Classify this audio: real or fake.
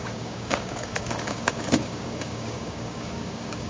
fake